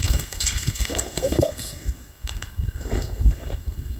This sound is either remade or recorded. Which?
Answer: remade